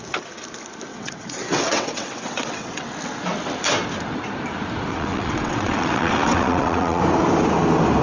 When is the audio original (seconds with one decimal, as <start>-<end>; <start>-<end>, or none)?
0.0-0.9; 2.9-4.9; 7.0-8.0